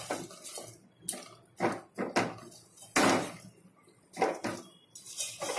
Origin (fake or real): real